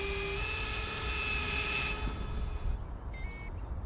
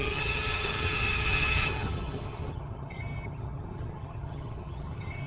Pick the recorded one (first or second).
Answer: first